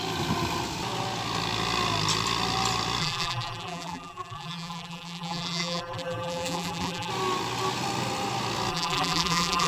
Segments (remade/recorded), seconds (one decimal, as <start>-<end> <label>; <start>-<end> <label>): 0.0-3.0 recorded; 3.0-7.1 remade; 7.1-8.7 recorded; 8.7-9.7 remade